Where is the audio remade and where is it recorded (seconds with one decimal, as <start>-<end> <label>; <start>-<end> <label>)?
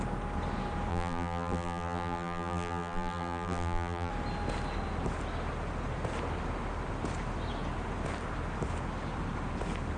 0.0-0.9 recorded; 0.9-4.1 remade; 4.1-10.0 recorded